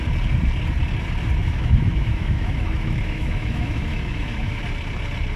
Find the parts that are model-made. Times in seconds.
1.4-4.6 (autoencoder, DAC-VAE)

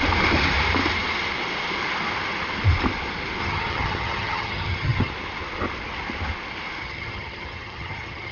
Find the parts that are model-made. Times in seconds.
3.4-5.1 (vocoder, HiFi-GAN); 6.8-8.3

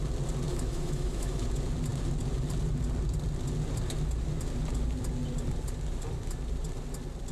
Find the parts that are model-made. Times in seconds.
0.5-1.4 (autoencoder, DAC-VAE)

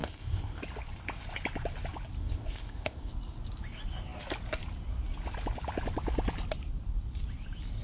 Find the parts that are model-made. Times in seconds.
0.0-0.6 (codec, ZipCodec); 2.2-3.1

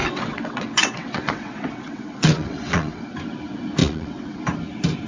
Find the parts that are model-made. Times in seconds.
0.0-3.0 (vocoder, WaveNeXt); 3.8-4.4

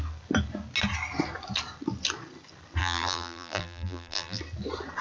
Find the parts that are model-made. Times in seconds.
2.8-4.4 (vocoder, BigVGAN v2)